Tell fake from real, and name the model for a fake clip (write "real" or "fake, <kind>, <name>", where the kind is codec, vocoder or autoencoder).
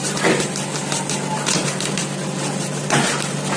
real